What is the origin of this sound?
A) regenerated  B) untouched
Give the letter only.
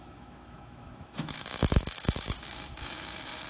A